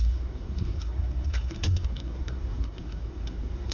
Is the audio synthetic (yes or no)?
yes